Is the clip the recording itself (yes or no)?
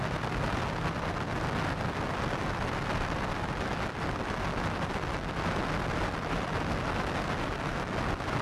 yes